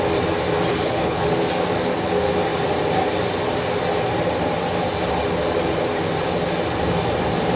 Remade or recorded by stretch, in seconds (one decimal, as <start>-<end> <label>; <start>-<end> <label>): 0.0-0.7 recorded; 0.7-1.3 remade; 1.3-7.6 recorded